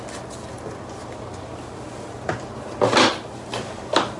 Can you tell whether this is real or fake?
real